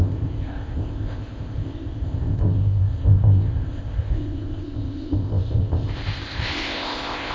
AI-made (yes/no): yes